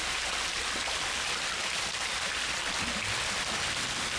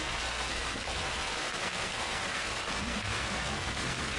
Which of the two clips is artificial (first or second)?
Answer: second